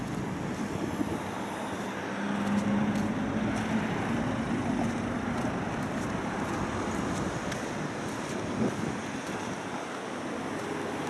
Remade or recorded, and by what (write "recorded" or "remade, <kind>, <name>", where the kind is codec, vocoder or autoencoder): recorded